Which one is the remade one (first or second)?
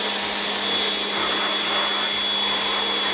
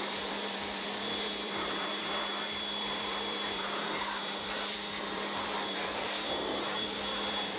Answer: second